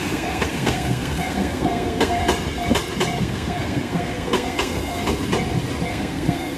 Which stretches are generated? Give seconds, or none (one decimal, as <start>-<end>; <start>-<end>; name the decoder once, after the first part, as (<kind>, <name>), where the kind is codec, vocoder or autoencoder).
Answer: 0.0-2.2 (codec, SNAC); 3.2-5.0; 5.9-6.6